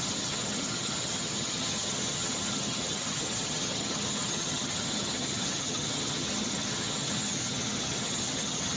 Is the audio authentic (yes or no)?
no